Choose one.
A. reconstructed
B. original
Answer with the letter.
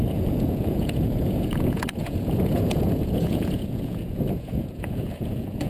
A